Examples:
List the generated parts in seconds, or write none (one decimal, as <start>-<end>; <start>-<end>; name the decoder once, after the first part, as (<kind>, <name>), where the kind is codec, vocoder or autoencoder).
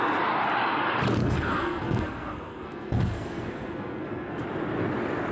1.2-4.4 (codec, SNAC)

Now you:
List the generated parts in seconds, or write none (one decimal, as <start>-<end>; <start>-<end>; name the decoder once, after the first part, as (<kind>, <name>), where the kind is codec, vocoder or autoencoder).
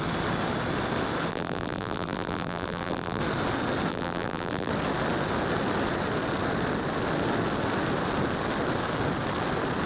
1.3-3.2 (vocoder, BigVGAN v2); 3.9-4.7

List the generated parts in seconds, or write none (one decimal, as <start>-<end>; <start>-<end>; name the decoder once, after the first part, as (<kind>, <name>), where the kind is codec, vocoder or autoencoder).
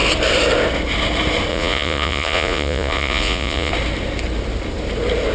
1.5-3.7 (vocoder, Vocos)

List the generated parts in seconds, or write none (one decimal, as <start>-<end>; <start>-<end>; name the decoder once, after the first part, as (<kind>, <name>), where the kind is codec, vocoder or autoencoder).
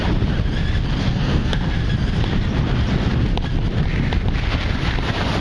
1.0-1.8 (codec, SNAC)